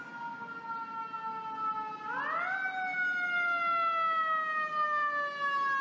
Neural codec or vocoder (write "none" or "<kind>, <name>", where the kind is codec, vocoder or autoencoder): none